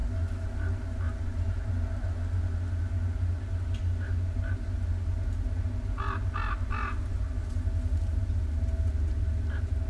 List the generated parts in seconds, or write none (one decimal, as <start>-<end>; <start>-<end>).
none